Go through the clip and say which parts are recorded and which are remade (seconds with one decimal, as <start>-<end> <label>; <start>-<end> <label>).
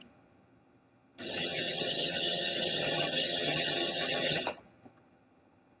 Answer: 0.0-5.8 remade